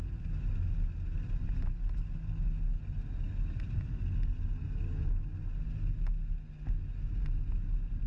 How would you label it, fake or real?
real